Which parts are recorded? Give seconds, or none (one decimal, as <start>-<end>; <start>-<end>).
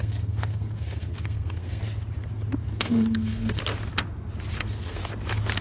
1.8-2.6; 3.6-4.6; 5.0-5.6